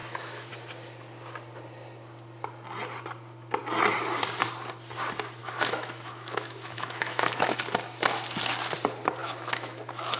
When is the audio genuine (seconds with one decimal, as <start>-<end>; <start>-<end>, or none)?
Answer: 0.5-5.4; 7.6-9.2